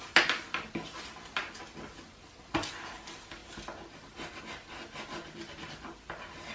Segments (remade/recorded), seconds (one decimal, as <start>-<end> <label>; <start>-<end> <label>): 0.0-6.5 recorded